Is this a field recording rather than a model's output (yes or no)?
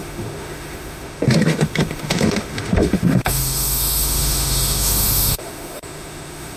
no